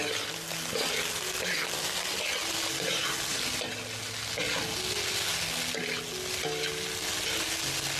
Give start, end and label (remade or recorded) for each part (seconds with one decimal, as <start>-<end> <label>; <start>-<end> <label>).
0.0-8.0 recorded